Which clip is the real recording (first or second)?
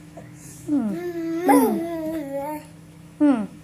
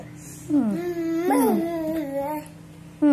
second